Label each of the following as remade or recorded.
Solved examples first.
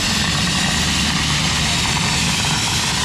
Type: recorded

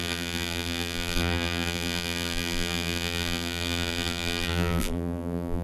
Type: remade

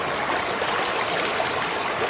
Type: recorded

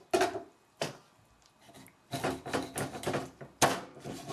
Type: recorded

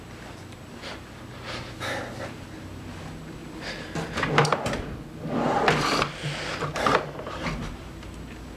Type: remade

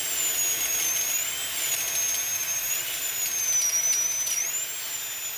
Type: recorded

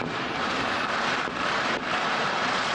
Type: remade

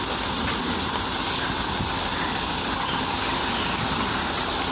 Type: remade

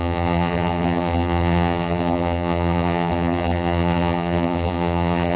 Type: remade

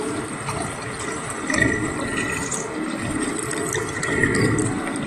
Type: recorded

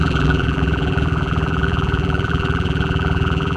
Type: remade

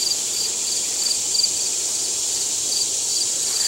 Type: recorded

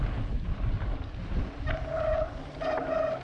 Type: recorded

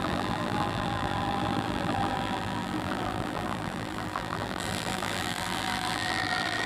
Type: remade